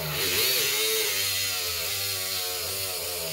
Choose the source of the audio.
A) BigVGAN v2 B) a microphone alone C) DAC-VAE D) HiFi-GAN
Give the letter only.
B